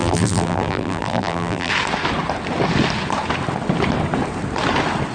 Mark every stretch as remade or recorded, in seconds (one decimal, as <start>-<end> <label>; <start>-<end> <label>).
0.0-1.7 remade; 1.7-5.1 recorded